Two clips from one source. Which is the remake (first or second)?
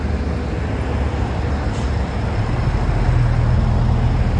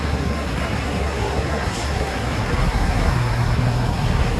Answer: second